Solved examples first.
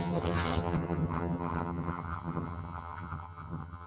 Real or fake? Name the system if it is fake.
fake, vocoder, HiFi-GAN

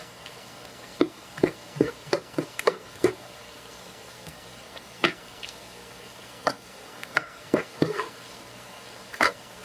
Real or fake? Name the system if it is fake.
fake, codec, SNAC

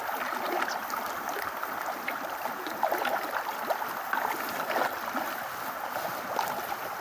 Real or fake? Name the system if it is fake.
real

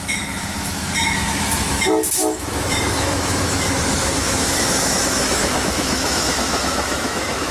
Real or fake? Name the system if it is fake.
fake, autoencoder, DAC-VAE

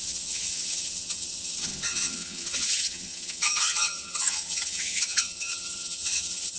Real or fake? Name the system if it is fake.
fake, vocoder, HiFi-GAN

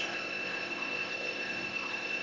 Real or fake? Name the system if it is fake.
fake, codec, ZipCodec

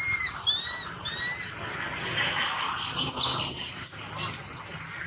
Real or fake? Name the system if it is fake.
real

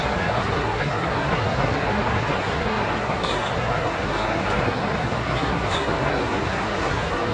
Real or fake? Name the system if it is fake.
fake, codec, SNAC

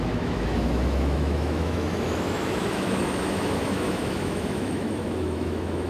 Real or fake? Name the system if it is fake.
fake, autoencoder, DAC-VAE